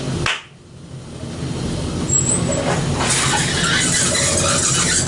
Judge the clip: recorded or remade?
recorded